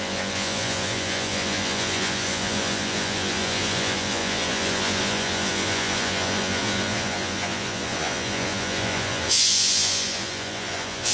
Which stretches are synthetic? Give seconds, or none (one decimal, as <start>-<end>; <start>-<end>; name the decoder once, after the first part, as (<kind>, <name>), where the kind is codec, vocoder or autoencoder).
0.0-11.1 (vocoder, Vocos)